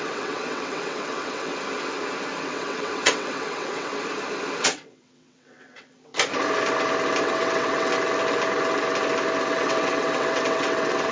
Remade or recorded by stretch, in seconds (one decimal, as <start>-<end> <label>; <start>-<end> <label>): 0.0-1.5 remade; 1.5-2.5 recorded; 2.5-3.9 remade; 3.9-4.6 recorded; 4.6-6.1 remade; 6.1-7.2 recorded; 7.2-7.9 remade; 7.9-9.5 recorded; 9.5-11.1 remade